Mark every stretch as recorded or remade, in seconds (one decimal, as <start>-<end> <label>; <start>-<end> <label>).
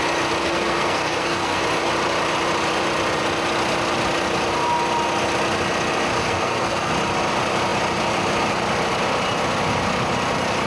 0.0-0.4 recorded; 0.4-1.6 remade; 1.6-6.2 recorded; 6.2-6.9 remade; 6.9-10.7 recorded